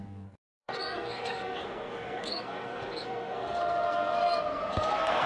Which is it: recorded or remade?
remade